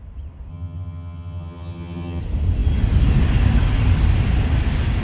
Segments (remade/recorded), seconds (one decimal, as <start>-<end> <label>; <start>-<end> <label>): 0.0-0.5 recorded; 0.5-2.2 remade; 2.2-5.0 recorded